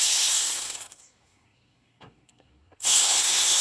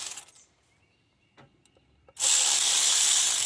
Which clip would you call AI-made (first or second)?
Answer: first